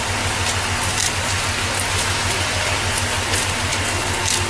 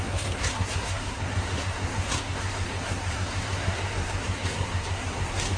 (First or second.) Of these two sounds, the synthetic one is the second